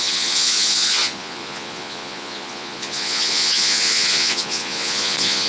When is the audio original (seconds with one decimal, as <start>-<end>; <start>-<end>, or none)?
none